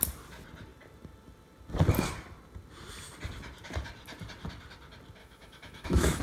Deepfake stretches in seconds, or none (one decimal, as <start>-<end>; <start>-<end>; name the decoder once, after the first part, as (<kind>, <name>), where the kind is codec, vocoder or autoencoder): 5.2-6.2 (autoencoder, DAC-VAE)